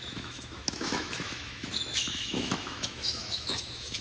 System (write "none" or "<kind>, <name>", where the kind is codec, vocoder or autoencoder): autoencoder, DAC-VAE